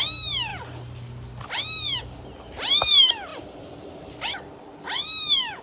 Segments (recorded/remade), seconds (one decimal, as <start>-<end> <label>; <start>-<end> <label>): 0.0-5.6 recorded